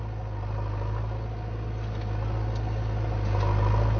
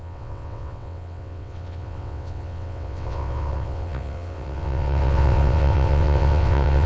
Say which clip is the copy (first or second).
second